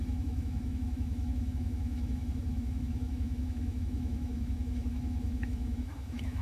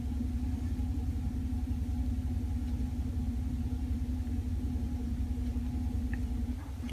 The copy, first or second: first